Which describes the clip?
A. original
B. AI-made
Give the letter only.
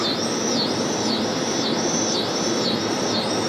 B